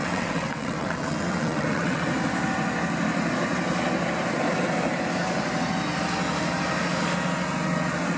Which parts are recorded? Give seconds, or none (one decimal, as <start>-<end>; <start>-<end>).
2.0-8.2